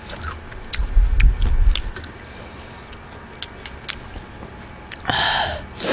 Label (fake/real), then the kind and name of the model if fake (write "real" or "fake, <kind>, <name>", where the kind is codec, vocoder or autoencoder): real